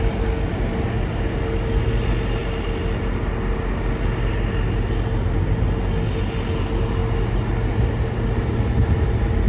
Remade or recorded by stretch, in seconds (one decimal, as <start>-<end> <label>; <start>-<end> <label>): 0.0-9.5 recorded